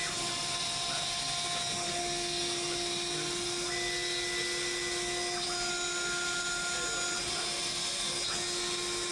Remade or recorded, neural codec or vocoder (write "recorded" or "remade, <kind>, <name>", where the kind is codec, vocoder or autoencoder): recorded